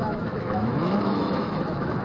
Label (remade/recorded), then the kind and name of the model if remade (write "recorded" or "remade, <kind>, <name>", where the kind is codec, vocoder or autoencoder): remade, autoencoder, DAC-VAE